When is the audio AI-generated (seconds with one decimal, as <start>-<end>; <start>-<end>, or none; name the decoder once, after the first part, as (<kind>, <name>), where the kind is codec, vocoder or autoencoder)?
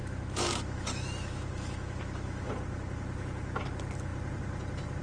0.0-2.5 (autoencoder, DAC-VAE)